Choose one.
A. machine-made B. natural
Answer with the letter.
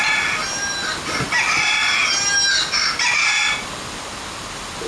B